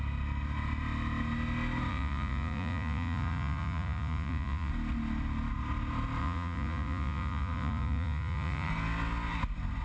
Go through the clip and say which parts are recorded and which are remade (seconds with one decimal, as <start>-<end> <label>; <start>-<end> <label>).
0.0-1.9 recorded; 1.9-4.7 remade; 4.7-6.2 recorded; 6.2-8.7 remade; 8.7-9.8 recorded